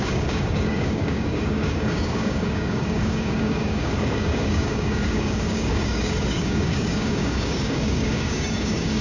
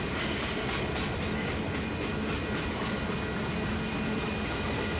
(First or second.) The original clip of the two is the second